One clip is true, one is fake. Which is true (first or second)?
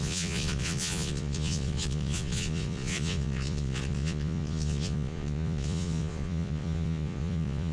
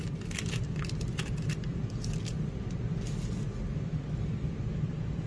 second